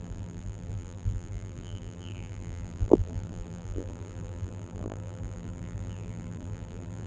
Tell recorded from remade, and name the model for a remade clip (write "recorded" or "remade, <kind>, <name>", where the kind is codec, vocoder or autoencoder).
remade, vocoder, BigVGAN v2